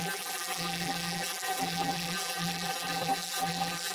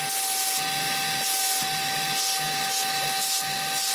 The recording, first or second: second